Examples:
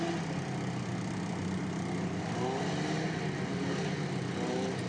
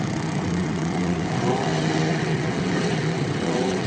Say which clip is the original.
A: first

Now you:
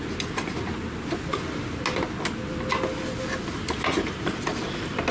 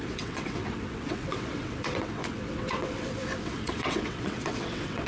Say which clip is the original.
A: first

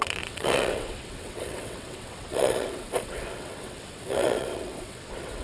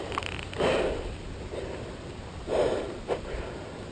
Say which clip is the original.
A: second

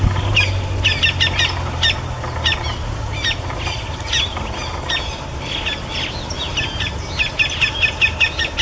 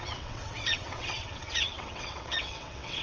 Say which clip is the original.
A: first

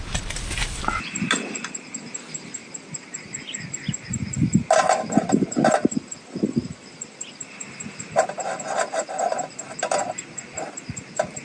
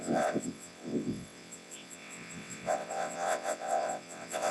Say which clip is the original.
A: first